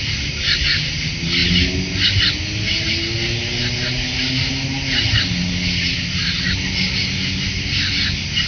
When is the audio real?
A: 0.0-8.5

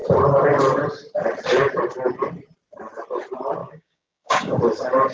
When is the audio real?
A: 0.0-3.6; 4.6-5.1

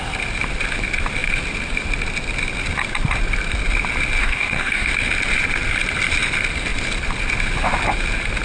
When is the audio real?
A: 0.0-4.2; 4.9-8.4

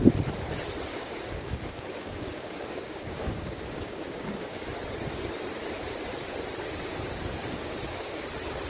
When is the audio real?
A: 0.0-0.9; 4.7-6.9; 8.2-8.7

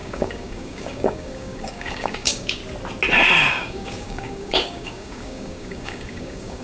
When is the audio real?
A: 2.6-3.5

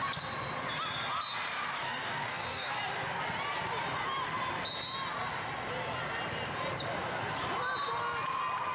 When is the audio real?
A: 0.0-1.8; 2.7-8.7

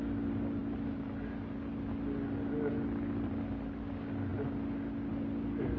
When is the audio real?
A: 0.0-5.8

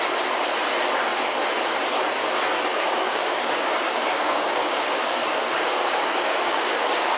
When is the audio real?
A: 0.0-2.7